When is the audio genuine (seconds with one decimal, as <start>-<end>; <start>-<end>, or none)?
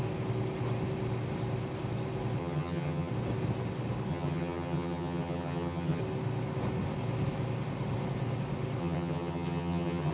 0.0-2.4; 3.1-4.1; 6.0-8.8